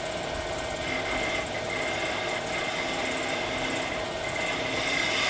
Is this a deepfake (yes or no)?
no